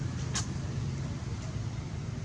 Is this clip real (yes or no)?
yes